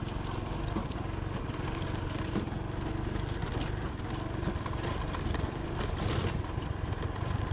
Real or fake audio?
real